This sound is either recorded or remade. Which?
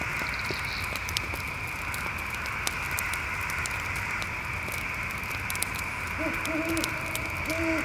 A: recorded